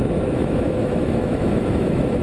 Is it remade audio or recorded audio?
remade